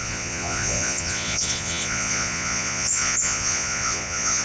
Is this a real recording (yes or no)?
no